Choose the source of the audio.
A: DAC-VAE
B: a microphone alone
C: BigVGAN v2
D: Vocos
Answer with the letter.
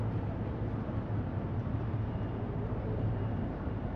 C